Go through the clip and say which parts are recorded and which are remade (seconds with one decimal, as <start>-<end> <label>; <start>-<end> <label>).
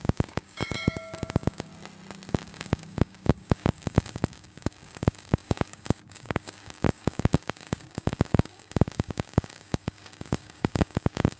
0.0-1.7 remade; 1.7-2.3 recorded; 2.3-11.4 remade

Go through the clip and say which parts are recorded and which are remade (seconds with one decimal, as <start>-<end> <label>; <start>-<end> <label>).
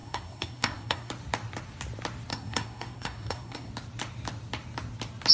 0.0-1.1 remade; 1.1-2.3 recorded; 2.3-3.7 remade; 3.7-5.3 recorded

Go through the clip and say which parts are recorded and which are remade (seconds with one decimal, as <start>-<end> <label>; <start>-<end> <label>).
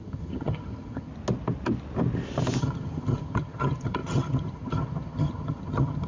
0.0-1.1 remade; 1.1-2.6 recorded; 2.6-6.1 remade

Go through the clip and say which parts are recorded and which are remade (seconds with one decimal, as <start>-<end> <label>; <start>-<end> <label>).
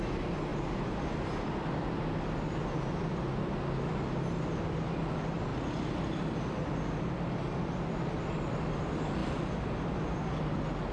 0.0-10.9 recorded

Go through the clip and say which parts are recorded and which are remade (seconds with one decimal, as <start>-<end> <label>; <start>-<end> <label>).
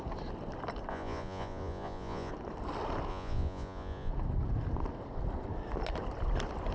0.0-0.9 recorded; 0.9-2.3 remade; 2.3-3.1 recorded; 3.1-4.1 remade; 4.1-6.7 recorded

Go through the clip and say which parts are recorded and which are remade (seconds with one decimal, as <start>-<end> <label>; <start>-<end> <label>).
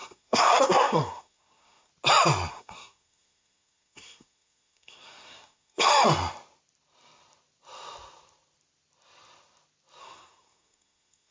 0.0-1.9 remade; 1.9-2.5 recorded; 2.5-5.9 remade; 5.9-10.0 recorded; 10.0-11.3 remade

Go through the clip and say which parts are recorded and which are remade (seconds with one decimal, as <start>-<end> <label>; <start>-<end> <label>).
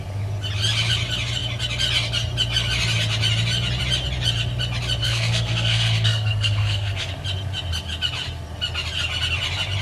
0.0-5.0 recorded; 5.0-7.1 remade; 7.1-9.8 recorded